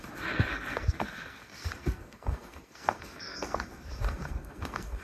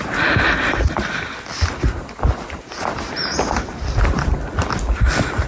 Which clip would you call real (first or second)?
second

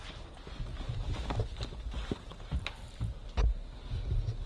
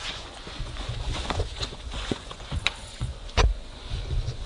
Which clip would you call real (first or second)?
first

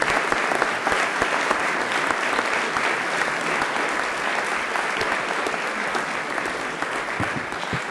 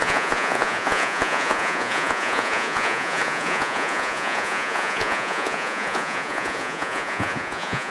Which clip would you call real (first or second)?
first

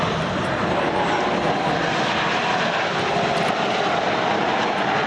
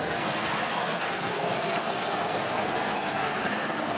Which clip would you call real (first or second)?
first